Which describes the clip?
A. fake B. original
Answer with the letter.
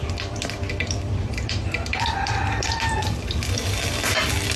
A